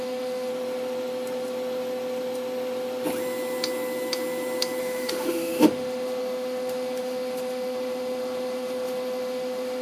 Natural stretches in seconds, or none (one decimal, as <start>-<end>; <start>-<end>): 0.5-4.8